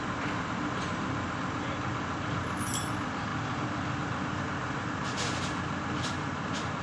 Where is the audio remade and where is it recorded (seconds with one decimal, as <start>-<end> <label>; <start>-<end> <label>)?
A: 0.0-6.8 recorded